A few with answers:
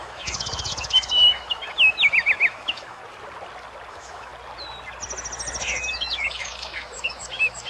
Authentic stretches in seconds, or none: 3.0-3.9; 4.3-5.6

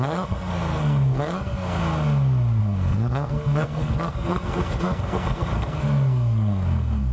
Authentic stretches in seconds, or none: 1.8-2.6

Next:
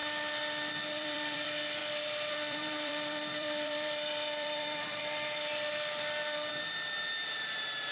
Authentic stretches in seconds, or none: 0.0-0.7

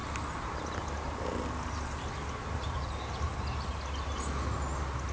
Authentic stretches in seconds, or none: 0.0-5.1